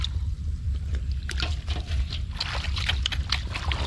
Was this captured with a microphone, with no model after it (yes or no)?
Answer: yes